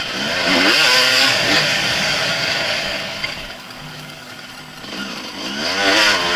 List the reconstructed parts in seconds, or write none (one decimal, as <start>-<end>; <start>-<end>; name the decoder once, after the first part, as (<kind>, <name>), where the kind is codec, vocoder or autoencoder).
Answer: 1.1-4.5 (codec, DAC)